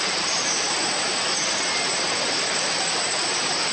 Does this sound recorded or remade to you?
remade